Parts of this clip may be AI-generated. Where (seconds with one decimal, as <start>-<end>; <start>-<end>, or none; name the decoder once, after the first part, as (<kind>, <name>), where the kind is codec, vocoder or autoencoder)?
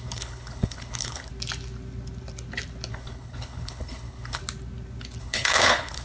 0.0-1.3 (codec, HILCodec); 2.9-4.4; 5.2-6.0